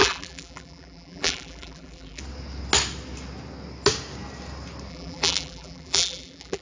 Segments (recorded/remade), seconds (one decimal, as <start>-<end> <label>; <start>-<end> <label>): 0.0-2.2 remade; 2.2-4.9 recorded; 4.9-6.6 remade